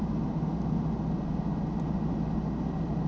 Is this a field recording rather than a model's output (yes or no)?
yes